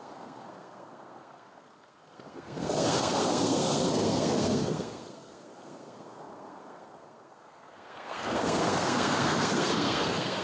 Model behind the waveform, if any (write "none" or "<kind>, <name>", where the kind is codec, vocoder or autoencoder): codec, SNAC